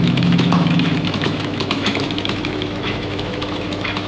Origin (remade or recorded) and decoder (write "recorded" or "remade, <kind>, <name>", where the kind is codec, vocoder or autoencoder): remade, autoencoder, DAC-VAE